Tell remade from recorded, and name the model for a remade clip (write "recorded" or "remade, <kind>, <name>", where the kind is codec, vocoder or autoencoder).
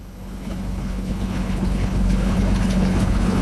remade, codec, HILCodec